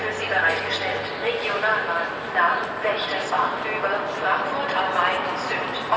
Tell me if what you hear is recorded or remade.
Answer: recorded